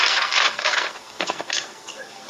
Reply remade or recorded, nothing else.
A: remade